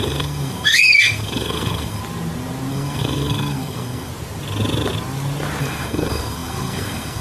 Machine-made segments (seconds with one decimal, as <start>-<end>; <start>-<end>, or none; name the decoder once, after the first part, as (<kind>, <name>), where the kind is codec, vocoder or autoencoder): 0.0-2.0 (codec, SNAC); 2.7-4.1; 5.6-7.2